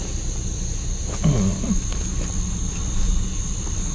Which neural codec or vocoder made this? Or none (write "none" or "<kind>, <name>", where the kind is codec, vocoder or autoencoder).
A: none